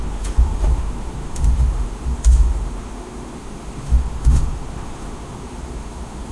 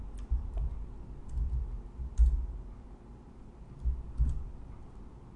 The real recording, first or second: second